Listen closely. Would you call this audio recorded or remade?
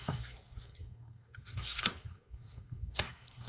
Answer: remade